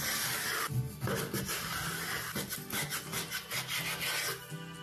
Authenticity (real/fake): real